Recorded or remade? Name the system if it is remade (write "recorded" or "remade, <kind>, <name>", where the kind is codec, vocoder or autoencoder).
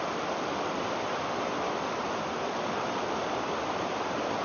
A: recorded